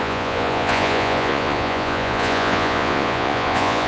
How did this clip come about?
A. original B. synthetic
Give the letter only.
B